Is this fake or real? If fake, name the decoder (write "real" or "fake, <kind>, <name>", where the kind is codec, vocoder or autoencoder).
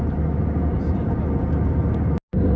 real